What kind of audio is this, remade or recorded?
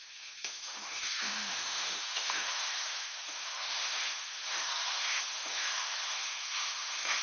remade